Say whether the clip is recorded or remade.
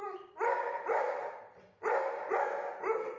recorded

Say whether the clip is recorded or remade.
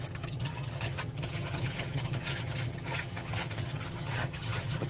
remade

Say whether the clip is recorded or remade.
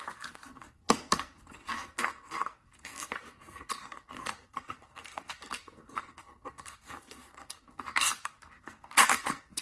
remade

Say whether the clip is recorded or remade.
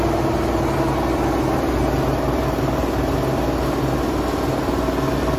recorded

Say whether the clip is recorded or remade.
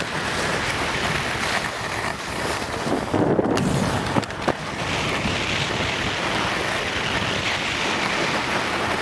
recorded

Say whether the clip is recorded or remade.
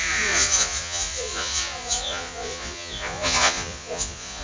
remade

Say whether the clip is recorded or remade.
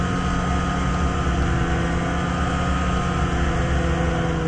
recorded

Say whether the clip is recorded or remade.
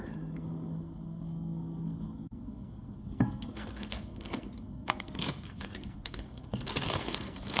remade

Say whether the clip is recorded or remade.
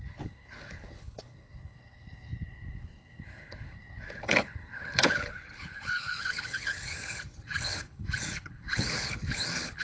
remade